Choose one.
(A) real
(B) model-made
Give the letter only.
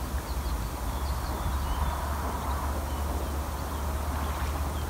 A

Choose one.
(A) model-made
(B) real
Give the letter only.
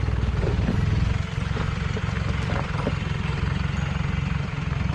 B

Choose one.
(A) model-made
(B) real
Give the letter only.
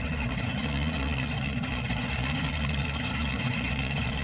A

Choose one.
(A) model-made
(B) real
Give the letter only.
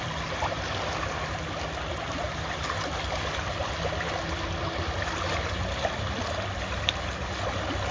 B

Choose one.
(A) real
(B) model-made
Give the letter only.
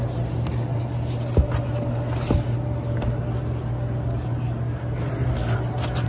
A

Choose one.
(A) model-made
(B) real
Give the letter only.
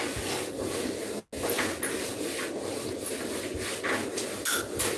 B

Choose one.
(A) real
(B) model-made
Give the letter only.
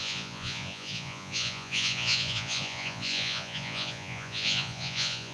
B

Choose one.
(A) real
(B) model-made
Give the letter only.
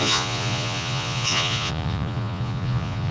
B